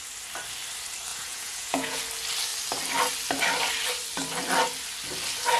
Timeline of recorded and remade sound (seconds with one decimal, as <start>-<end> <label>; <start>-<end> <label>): 0.0-1.1 recorded; 1.1-2.0 remade; 2.0-5.6 recorded